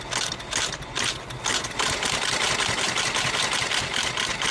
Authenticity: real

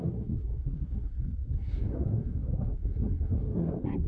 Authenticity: fake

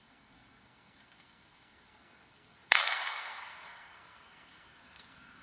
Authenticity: fake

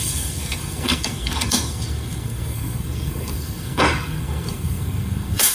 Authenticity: fake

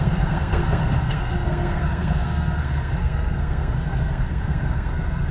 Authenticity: fake